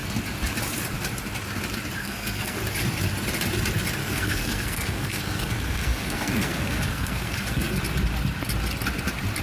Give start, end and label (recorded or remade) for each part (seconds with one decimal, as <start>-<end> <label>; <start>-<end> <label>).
0.0-2.0 recorded; 2.0-2.6 remade; 2.6-4.0 recorded; 4.0-7.8 remade; 7.8-9.4 recorded